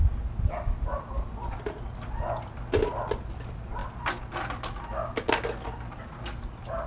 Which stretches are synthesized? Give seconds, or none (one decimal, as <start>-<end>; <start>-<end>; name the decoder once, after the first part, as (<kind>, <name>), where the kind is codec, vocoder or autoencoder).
none